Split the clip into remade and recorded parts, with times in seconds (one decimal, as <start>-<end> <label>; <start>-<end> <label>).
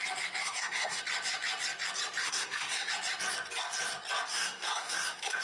0.0-0.4 recorded; 0.4-1.0 remade; 1.0-2.2 recorded; 2.2-2.9 remade; 2.9-4.3 recorded; 4.3-5.4 remade